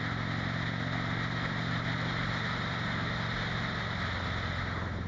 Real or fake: real